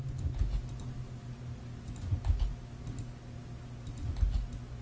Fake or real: real